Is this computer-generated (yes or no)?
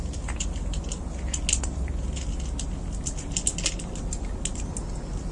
no